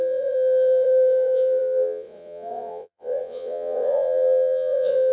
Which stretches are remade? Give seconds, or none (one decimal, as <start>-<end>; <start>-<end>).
0.0-5.1